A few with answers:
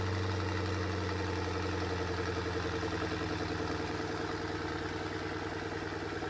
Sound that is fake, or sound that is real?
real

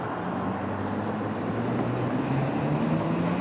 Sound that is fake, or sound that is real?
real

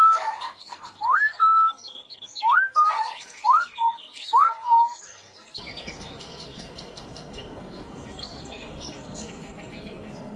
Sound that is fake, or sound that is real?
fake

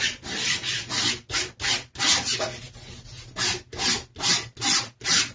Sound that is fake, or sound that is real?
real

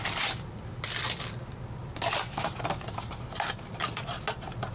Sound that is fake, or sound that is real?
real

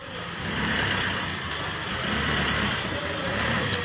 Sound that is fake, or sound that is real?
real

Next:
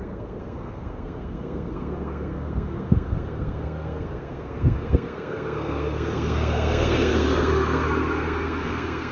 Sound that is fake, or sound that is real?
fake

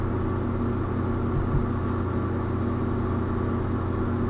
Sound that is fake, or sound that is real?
real